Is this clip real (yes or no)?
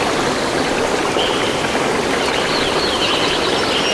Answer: yes